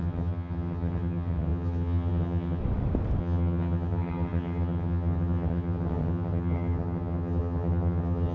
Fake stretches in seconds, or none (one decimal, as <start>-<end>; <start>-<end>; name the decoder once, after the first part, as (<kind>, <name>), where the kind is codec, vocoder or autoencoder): 0.0-2.6 (vocoder, HiFi-GAN); 3.2-8.3